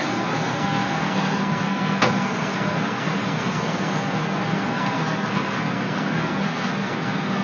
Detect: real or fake fake